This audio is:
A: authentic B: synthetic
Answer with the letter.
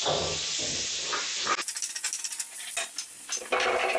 A